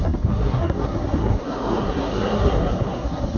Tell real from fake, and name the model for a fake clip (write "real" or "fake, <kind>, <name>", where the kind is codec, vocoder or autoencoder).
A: fake, codec, SNAC